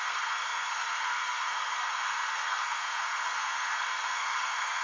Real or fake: fake